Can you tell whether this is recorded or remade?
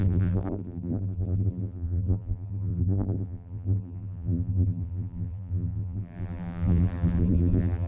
remade